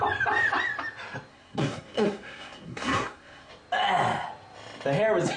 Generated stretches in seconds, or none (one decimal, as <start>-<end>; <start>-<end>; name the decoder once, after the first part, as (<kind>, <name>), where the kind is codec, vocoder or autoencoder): 1.3-3.5 (codec, SNAC)